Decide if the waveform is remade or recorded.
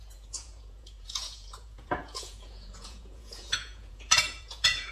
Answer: remade